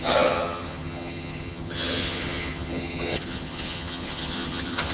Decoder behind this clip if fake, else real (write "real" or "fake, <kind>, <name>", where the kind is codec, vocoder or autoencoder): fake, vocoder, HiFi-GAN